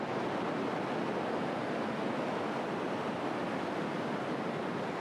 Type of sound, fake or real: real